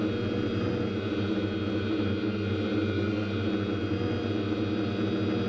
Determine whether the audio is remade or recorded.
recorded